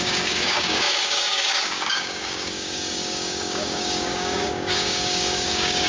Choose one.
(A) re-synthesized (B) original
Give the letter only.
A